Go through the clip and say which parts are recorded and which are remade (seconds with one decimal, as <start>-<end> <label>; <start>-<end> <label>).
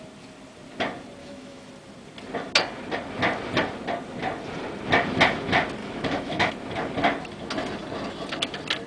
0.0-1.2 recorded; 1.2-1.7 remade; 1.7-5.8 recorded; 5.8-6.5 remade; 6.5-8.9 recorded